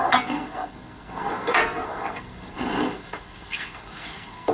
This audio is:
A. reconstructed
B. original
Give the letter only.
A